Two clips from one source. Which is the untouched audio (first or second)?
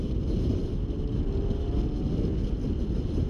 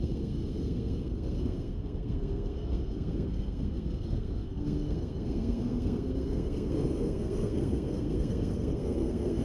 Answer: first